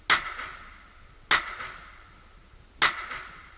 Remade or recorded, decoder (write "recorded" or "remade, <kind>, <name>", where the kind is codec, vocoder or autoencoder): recorded